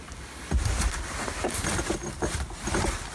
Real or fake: real